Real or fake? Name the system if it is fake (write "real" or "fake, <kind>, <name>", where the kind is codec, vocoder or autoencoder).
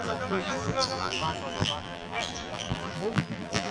fake, vocoder, BigVGAN v2